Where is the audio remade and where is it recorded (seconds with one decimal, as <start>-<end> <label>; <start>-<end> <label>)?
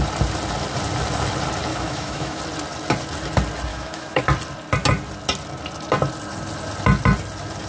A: 0.0-1.7 recorded; 1.7-2.4 remade; 2.4-3.7 recorded; 3.7-4.2 remade; 4.2-7.7 recorded